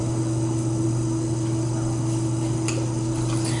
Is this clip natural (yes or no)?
yes